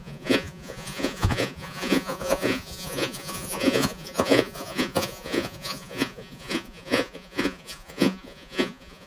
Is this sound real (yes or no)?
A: no